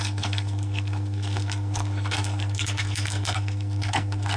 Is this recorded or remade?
remade